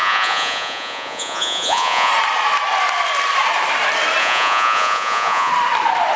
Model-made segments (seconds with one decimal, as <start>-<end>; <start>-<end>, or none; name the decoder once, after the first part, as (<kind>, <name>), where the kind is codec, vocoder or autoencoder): 0.0-2.1 (vocoder, Vocos); 4.2-5.5